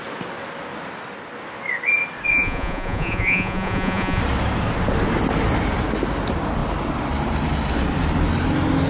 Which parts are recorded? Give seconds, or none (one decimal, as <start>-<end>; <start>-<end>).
0.0-2.3; 4.2-8.9

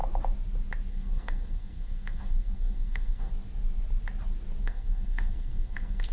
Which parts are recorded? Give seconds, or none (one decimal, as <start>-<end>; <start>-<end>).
0.0-0.9; 3.3-4.6

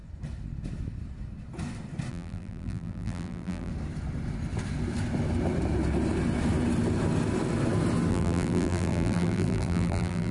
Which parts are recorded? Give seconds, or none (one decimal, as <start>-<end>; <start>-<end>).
0.0-2.1; 3.7-8.1

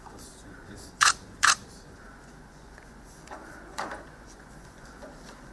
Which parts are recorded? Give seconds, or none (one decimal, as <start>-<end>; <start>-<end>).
none

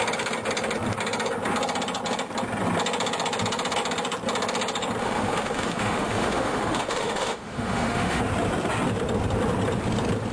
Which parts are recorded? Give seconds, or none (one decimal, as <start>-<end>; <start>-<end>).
0.0-5.0; 8.2-10.3

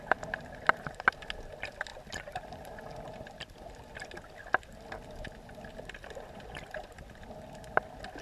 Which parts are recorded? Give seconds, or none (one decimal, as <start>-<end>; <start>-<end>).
0.0-8.2